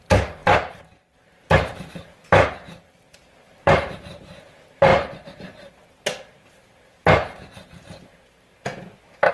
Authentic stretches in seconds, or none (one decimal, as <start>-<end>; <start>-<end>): 0.0-0.4; 1.7-3.5; 4.4-9.3